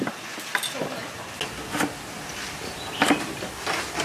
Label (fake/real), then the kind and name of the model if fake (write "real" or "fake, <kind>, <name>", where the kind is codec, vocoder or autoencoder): real